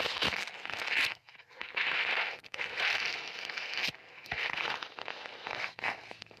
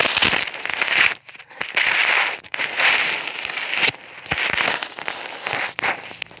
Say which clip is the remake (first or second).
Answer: first